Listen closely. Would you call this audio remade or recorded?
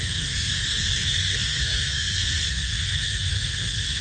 remade